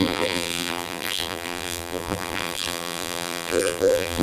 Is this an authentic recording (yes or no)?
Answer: no